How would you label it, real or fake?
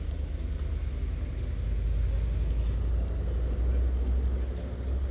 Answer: real